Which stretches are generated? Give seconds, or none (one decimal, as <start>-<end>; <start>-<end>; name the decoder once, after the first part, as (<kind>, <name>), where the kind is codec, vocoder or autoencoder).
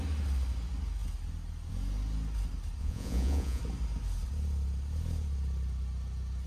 2.8-3.6 (vocoder, Vocos)